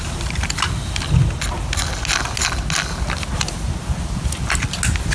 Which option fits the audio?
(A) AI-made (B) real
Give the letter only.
B